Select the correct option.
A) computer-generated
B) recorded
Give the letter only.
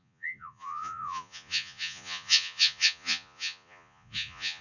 A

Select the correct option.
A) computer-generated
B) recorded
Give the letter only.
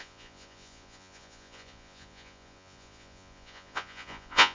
A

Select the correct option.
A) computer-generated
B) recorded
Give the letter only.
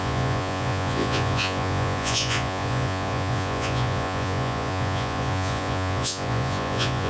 A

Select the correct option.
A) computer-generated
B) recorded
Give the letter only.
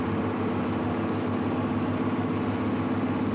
B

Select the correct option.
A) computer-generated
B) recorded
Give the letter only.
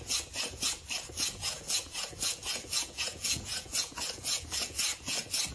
A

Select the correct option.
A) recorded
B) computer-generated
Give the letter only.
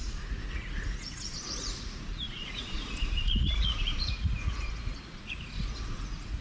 B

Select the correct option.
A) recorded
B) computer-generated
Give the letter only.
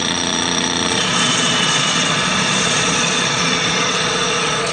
B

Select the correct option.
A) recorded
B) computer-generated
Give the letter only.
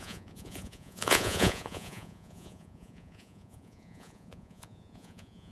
B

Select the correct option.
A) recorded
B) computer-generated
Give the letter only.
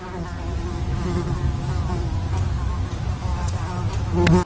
A